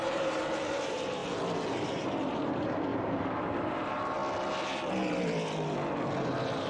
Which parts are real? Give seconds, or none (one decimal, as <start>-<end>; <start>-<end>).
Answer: 1.2-1.7; 4.2-6.2